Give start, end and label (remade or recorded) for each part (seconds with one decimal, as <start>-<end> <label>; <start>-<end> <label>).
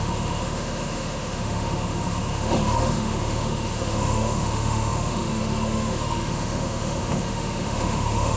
0.0-8.4 remade